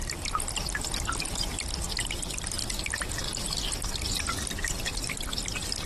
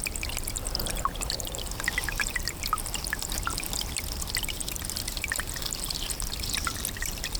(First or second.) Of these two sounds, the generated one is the second